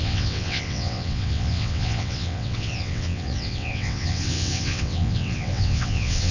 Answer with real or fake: fake